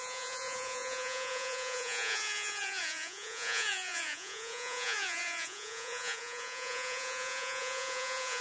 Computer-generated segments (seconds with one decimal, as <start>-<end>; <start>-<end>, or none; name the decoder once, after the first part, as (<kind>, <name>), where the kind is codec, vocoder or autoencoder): 0.0-8.4 (vocoder, Vocos)